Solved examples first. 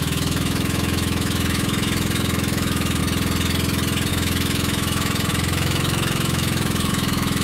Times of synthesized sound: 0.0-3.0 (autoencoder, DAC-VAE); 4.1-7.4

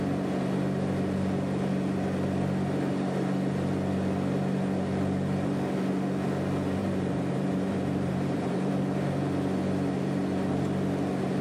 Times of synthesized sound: 6.8-8.7 (vocoder, BigVGAN v2)